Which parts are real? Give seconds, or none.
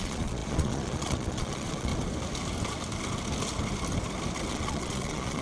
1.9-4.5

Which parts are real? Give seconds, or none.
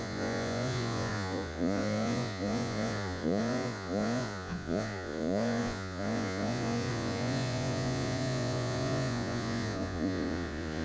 none